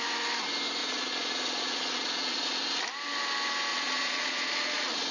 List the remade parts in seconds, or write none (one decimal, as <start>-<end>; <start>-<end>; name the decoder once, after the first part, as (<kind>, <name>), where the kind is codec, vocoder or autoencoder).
0.8-2.6 (vocoder, Vocos); 3.7-5.1